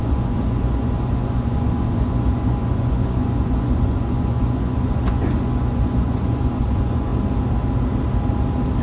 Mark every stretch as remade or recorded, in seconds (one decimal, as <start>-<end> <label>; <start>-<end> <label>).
0.0-7.1 remade; 7.1-8.8 recorded